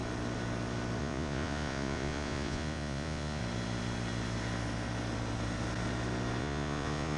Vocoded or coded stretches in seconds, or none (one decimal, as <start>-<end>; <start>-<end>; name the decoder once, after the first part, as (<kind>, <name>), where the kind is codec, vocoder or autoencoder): 1.0-3.4 (vocoder, Vocos); 6.4-7.2